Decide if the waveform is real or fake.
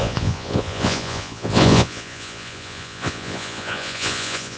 fake